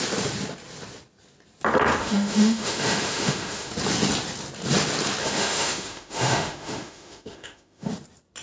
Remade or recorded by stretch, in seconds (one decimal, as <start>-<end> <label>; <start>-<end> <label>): 0.0-2.0 recorded; 2.0-3.7 remade; 3.7-5.2 recorded; 5.2-7.9 remade; 7.9-8.4 recorded